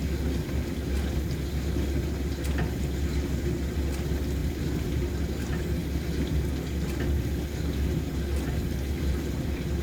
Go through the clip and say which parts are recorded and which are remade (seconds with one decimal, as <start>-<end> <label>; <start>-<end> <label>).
0.0-4.4 recorded; 4.4-5.3 remade; 5.3-9.8 recorded